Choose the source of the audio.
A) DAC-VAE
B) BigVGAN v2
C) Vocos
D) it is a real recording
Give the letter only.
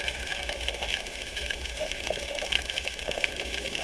A